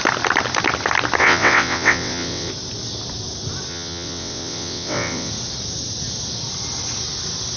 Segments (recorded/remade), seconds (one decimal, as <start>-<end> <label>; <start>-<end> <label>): 0.0-1.2 recorded; 1.2-2.5 remade; 2.5-3.7 recorded; 3.7-5.3 remade; 5.3-7.6 recorded